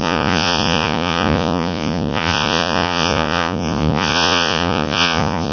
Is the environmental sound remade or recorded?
remade